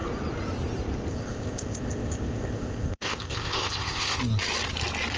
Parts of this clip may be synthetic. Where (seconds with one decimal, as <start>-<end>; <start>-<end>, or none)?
1.1-4.2